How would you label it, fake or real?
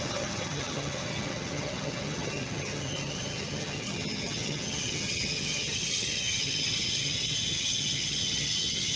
fake